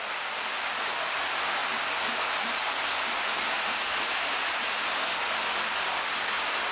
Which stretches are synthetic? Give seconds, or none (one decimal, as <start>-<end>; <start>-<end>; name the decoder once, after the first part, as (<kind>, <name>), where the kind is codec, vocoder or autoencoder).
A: none